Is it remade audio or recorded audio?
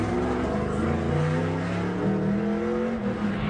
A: recorded